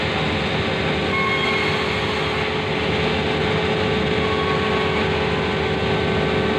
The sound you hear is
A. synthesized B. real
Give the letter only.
B